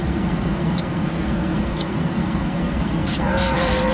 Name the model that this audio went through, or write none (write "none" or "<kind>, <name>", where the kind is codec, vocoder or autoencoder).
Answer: codec, SNAC